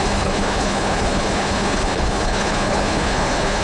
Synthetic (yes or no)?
yes